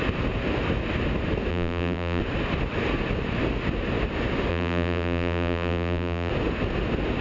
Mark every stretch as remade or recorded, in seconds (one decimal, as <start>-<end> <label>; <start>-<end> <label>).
0.0-1.5 recorded; 1.5-2.2 remade; 2.2-4.5 recorded; 4.5-6.3 remade; 6.3-7.2 recorded